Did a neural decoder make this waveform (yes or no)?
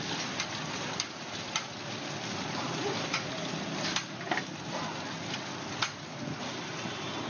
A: no